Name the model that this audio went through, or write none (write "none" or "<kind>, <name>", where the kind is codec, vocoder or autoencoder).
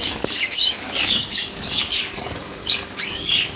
codec, DAC